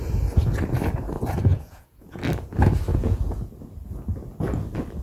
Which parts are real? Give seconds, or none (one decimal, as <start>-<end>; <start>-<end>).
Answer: 0.0-1.5; 2.2-2.9; 3.5-5.0